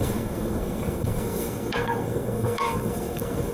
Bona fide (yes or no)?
no